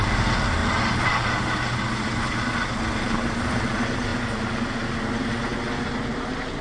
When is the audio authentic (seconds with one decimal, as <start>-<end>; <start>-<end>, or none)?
0.0-6.6